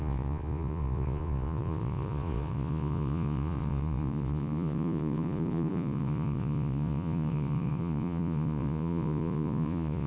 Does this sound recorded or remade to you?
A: remade